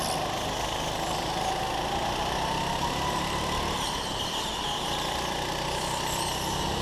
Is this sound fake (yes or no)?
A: no